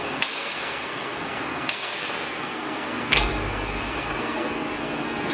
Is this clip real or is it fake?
fake